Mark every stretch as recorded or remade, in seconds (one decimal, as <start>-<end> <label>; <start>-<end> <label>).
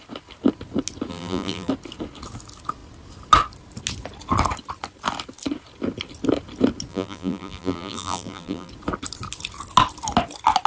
0.0-1.1 recorded; 1.1-1.7 remade; 1.7-6.9 recorded; 6.9-8.7 remade; 8.7-10.7 recorded